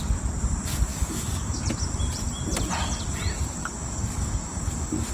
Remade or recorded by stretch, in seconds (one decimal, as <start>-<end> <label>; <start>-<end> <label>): 0.0-0.9 recorded; 0.9-1.6 remade; 1.6-3.6 recorded; 3.6-5.1 remade